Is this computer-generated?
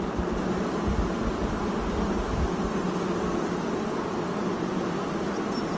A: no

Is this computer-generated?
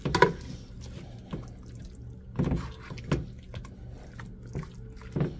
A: no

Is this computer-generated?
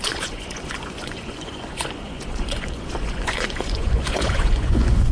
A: yes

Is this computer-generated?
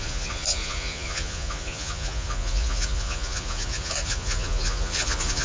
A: yes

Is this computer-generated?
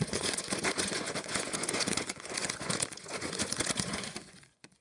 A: yes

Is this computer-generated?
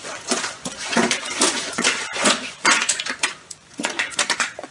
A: yes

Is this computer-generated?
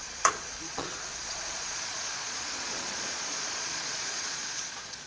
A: yes